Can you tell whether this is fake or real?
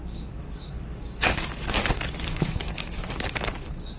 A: fake